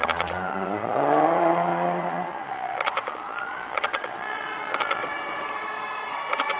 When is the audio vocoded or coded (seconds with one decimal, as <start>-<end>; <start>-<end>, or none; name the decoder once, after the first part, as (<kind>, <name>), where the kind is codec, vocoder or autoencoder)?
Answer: 0.0-5.0 (vocoder, Vocos)